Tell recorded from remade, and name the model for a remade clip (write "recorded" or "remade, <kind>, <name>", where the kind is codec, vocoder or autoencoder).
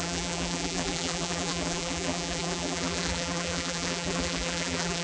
remade, vocoder, BigVGAN v2